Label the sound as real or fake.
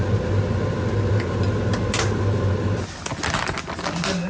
real